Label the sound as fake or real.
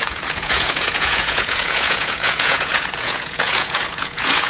fake